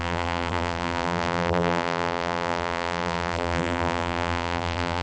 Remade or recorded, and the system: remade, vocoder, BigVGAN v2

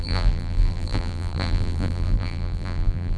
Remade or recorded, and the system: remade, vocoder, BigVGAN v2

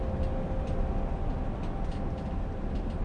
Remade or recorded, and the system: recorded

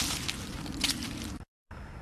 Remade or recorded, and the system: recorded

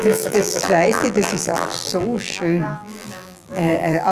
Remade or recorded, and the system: remade, vocoder, BigVGAN v2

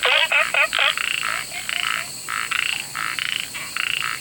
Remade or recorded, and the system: recorded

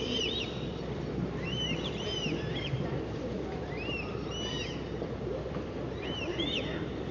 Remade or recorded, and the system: remade, vocoder, BigVGAN v2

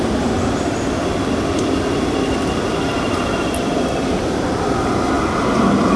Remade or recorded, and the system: recorded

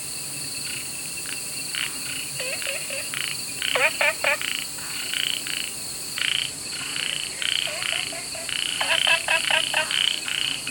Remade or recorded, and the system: remade, vocoder, BigVGAN v2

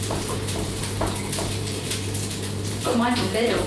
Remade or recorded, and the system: remade, vocoder, BigVGAN v2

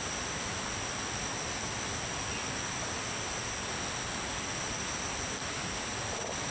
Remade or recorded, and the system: recorded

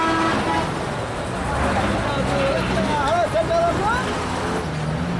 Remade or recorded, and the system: recorded